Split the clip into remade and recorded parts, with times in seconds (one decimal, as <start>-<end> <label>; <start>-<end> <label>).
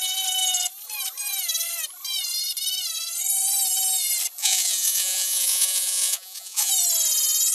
0.0-4.4 recorded; 4.4-6.7 remade; 6.7-7.5 recorded